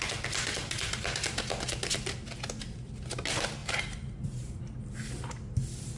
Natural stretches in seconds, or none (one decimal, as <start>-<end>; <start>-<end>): 0.0-0.6; 1.4-3.6; 4.6-6.0